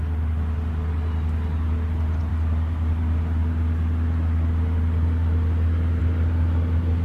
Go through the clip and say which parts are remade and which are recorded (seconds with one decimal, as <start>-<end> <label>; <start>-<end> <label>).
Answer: 0.0-7.0 recorded